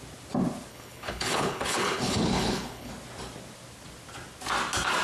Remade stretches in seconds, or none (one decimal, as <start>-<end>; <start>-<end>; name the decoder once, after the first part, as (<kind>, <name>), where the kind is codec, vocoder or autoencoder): 0.7-2.9 (codec, HILCodec)